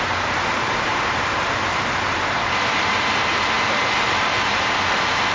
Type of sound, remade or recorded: remade